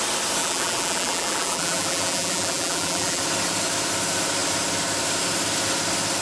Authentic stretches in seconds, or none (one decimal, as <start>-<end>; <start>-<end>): 0.0-0.4; 3.2-6.2